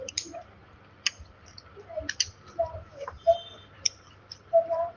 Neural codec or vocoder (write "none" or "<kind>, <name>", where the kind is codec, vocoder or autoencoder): none